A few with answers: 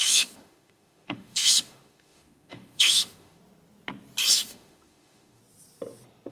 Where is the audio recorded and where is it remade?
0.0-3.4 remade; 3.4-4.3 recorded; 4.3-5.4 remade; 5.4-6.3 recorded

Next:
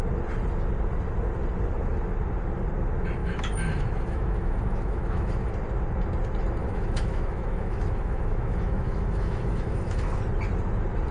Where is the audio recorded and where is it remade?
0.0-3.2 recorded; 3.2-5.5 remade; 5.5-6.6 recorded; 6.6-10.2 remade; 10.2-11.1 recorded

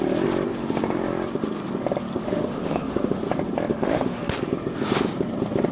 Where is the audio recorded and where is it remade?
0.0-2.2 recorded; 2.2-3.2 remade; 3.2-3.7 recorded; 3.7-4.2 remade; 4.2-5.7 recorded

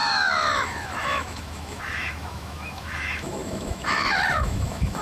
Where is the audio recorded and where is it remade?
0.0-5.0 remade

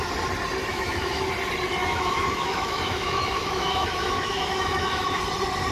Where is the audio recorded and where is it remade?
0.0-0.7 recorded; 0.7-1.2 remade; 1.2-1.8 recorded; 1.8-5.2 remade; 5.2-5.7 recorded

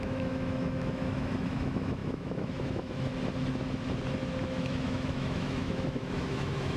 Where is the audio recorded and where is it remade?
0.0-3.1 remade; 3.1-4.4 recorded; 4.4-6.8 remade

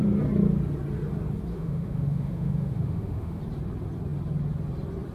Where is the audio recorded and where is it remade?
0.0-1.5 recorded; 1.5-3.4 remade; 3.4-5.1 recorded

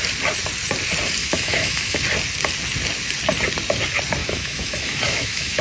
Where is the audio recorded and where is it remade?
0.0-1.2 recorded; 1.2-2.0 remade; 2.0-4.2 recorded; 4.2-5.6 remade